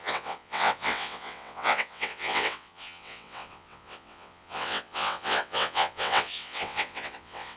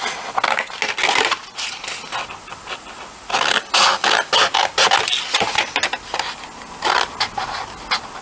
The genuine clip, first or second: second